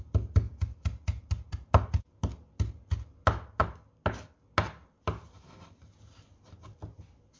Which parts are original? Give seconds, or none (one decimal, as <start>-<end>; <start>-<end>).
0.0-7.4